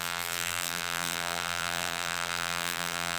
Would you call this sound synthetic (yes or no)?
yes